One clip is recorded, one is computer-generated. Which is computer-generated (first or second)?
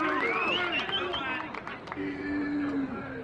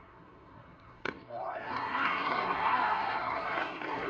second